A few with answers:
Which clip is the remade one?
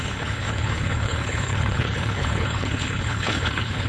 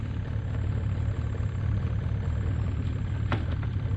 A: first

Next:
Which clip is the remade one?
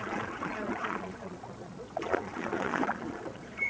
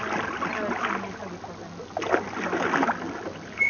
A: first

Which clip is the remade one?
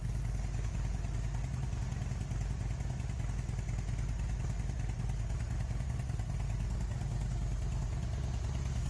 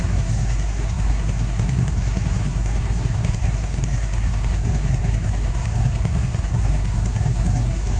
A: second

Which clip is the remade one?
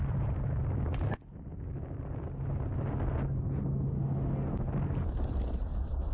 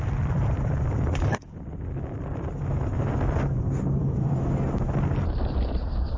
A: second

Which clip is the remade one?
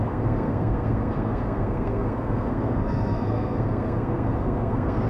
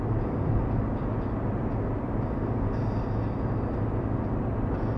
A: first